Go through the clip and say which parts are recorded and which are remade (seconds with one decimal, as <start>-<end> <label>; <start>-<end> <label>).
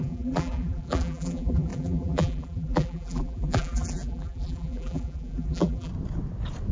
0.0-5.9 remade; 5.9-6.7 recorded